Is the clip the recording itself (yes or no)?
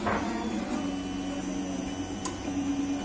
yes